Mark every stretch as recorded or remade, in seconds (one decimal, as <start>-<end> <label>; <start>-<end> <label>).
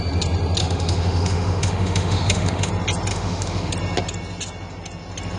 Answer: 0.0-0.6 recorded; 0.6-2.7 remade; 2.7-3.1 recorded; 3.1-3.7 remade; 3.7-5.4 recorded